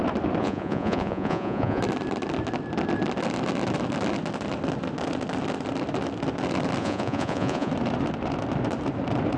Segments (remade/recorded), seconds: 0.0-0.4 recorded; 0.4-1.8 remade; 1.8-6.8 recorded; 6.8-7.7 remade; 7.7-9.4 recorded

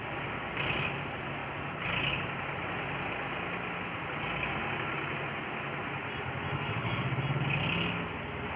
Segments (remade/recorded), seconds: 0.0-4.6 recorded; 4.6-5.3 remade; 5.3-6.8 recorded; 6.8-7.5 remade; 7.5-8.6 recorded

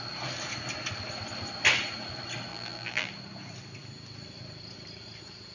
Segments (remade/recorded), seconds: 0.0-2.5 recorded; 2.5-3.1 remade; 3.1-5.5 recorded

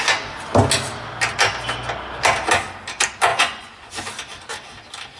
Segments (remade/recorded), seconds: 0.0-3.3 recorded; 3.3-3.9 remade; 3.9-5.2 recorded

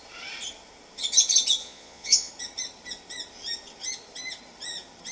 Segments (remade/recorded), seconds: 0.0-1.6 recorded; 1.6-2.3 remade; 2.3-5.1 recorded

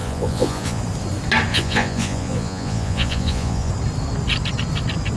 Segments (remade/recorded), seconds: 0.0-0.8 remade; 0.8-1.5 recorded; 1.5-3.7 remade; 3.7-5.2 recorded

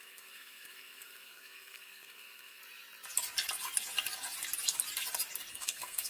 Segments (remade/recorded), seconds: 0.0-2.6 remade; 2.6-5.5 recorded; 5.5-6.1 remade